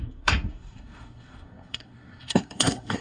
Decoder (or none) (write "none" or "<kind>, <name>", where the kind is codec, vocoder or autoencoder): codec, SNAC